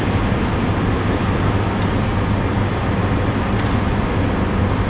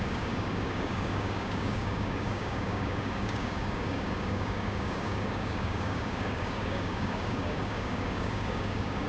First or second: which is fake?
second